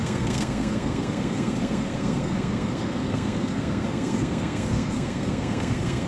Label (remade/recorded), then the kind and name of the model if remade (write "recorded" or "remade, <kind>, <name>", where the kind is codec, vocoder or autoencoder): remade, codec, SNAC